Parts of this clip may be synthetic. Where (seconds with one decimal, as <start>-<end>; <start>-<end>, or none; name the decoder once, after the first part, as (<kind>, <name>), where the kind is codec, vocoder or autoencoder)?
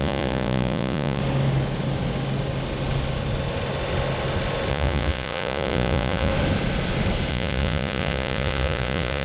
0.0-1.2 (vocoder, Vocos); 4.7-6.3; 7.3-9.2